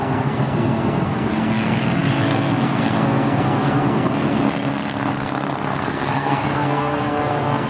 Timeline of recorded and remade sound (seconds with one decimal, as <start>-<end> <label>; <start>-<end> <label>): 0.0-7.7 remade